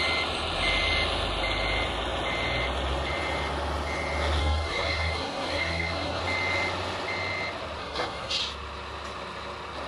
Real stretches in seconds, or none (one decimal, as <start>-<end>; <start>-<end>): 0.0-4.4; 6.2-7.8; 8.4-9.9